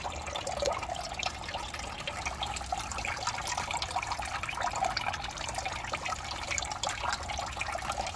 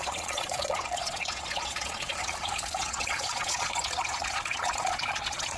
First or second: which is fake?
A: second